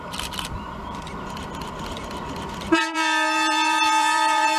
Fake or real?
fake